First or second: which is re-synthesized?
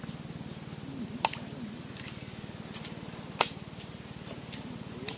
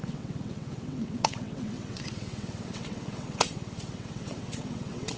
second